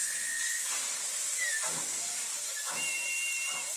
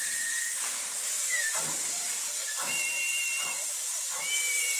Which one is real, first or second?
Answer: first